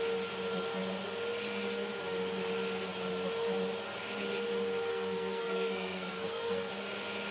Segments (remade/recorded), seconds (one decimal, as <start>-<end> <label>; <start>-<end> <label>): 0.0-4.9 recorded; 4.9-6.7 remade; 6.7-7.3 recorded